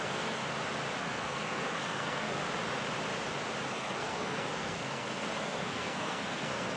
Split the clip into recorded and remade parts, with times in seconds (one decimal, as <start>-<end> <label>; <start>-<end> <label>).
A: 0.0-0.4 remade; 0.4-1.0 recorded; 1.0-2.4 remade; 2.4-3.7 recorded; 3.7-6.8 remade